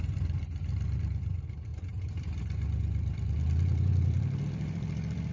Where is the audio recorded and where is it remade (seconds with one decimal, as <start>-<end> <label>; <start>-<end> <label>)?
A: 0.0-5.3 remade

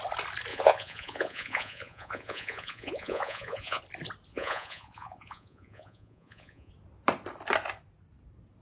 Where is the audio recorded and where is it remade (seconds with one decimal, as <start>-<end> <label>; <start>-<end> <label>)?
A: 0.0-0.5 recorded; 0.5-3.8 remade; 3.8-4.3 recorded; 4.3-6.7 remade; 6.7-8.6 recorded